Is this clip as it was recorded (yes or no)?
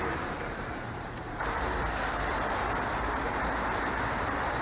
no